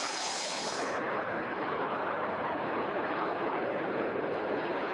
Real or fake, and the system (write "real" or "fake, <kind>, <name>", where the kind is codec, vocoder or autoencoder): fake, codec, HILCodec